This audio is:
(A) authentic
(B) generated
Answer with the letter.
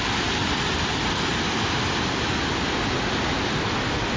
A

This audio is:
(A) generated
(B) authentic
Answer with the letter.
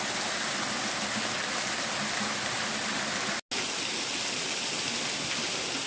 B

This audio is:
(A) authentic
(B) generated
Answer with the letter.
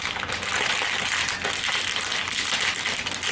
A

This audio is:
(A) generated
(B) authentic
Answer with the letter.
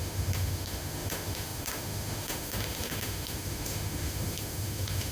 A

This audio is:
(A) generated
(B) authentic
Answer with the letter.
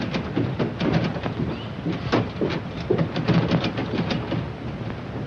B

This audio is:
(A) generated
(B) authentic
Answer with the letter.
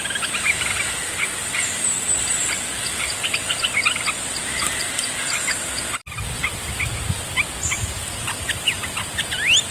B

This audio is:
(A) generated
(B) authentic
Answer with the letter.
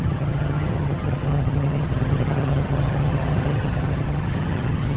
A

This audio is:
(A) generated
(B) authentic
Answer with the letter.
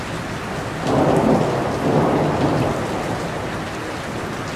B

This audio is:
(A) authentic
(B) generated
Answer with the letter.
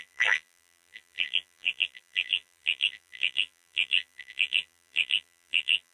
B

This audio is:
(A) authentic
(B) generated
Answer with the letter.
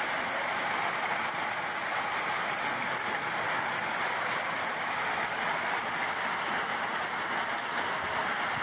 A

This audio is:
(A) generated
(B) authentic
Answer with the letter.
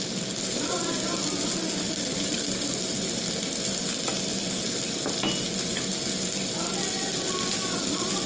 B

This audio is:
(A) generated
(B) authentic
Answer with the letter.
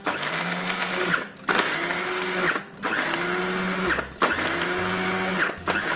B